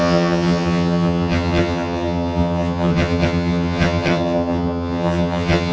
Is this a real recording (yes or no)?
no